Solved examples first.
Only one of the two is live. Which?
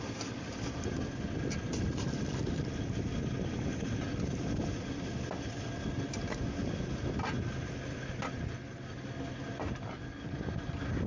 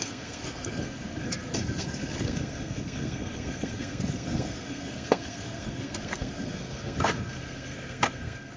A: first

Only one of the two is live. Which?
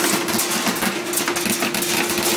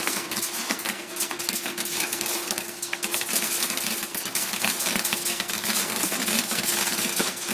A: first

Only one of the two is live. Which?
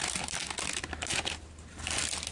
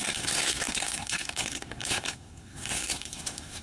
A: first